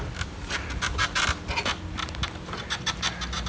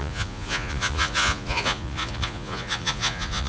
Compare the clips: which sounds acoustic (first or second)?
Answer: first